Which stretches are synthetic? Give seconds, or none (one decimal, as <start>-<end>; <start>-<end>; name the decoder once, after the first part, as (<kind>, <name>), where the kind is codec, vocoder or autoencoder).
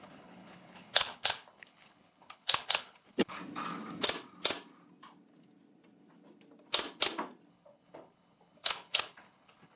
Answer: 0.0-3.4 (codec, HILCodec); 7.5-9.8